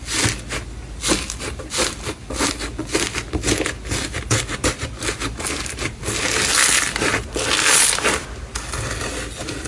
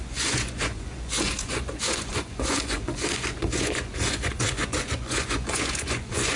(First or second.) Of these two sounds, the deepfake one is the second